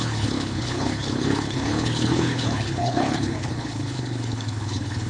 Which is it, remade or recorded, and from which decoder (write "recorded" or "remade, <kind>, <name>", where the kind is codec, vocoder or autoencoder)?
remade, codec, HILCodec